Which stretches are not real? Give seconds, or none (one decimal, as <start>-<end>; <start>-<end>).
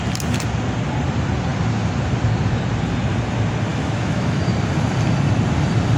3.7-4.4